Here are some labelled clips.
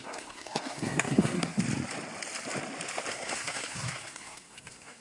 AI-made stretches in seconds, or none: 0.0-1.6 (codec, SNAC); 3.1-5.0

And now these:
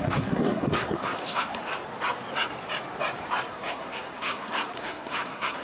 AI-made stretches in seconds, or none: 0.0-1.7 (codec, SNAC); 3.5-5.6

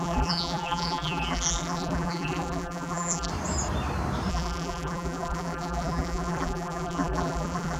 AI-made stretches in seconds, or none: 0.0-3.3 (vocoder, BigVGAN v2); 4.3-7.8

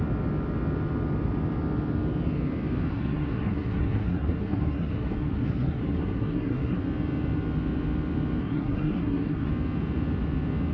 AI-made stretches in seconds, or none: 2.9-6.8 (codec, SNAC); 8.4-9.5